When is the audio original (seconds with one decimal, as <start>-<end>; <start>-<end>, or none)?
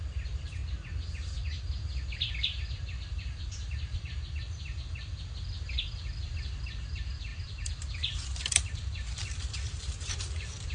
0.6-3.0